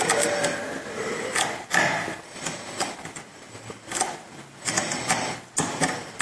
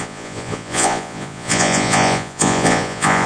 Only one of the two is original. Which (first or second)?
first